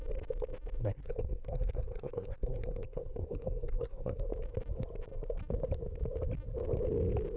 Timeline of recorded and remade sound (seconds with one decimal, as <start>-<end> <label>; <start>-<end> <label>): 0.0-0.8 recorded; 0.8-4.2 remade; 4.2-7.4 recorded